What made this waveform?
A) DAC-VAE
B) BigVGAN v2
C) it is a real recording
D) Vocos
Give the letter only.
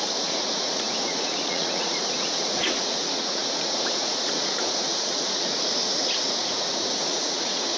D